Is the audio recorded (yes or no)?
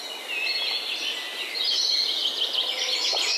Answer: yes